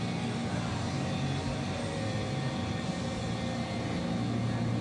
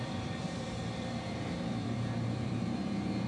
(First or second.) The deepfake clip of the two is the second